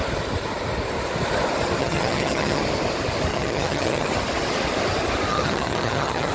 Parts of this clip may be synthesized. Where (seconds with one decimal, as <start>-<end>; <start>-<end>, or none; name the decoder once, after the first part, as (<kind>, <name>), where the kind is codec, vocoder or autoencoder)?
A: 1.8-2.6 (vocoder, HiFi-GAN); 3.3-4.1; 5.3-6.3